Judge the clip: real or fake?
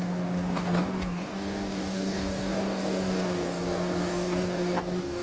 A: fake